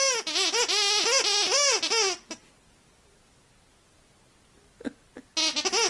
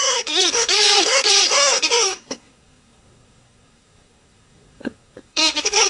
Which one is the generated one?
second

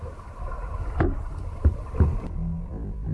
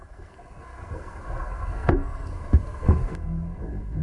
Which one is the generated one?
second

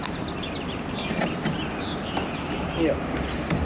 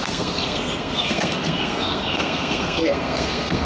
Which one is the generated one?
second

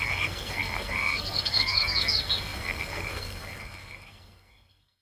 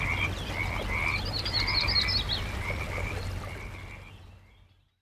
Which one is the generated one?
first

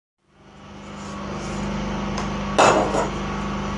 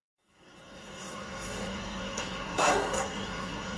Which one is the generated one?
second